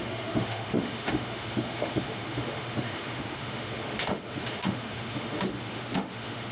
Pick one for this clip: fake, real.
fake